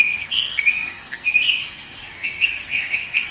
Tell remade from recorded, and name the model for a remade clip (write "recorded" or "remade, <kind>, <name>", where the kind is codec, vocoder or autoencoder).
remade, codec, SNAC